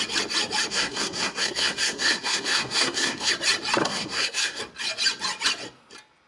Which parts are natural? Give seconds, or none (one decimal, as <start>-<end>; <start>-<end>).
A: 0.0-0.7; 3.3-3.8; 4.6-6.3